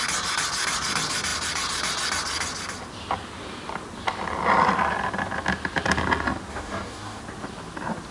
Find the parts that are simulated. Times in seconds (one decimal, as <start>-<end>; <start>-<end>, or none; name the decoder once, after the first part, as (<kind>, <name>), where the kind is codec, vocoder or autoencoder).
6.5-7.2 (codec, DAC)